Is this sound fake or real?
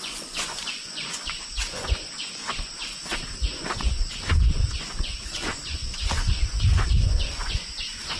fake